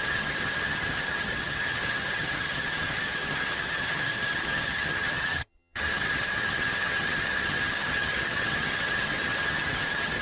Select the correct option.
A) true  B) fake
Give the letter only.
B